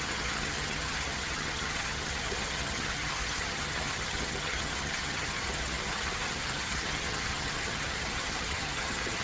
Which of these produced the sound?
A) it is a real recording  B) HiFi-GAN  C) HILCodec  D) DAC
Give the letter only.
B